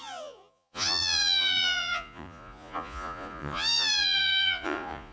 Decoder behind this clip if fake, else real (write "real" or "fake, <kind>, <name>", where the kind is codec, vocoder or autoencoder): fake, vocoder, Vocos